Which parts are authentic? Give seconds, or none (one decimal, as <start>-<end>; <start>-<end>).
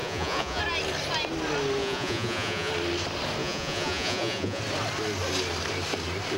0.6-1.8; 2.7-3.4; 4.6-6.4